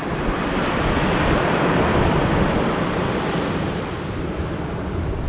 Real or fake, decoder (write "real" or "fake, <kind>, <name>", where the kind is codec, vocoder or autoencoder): real